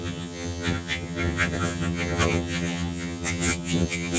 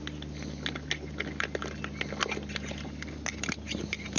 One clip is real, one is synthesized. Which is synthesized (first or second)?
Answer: first